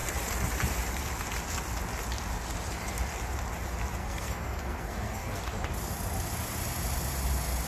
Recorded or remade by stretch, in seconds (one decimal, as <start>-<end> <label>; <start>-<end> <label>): 0.0-4.0 recorded; 4.0-5.4 remade; 5.4-7.7 recorded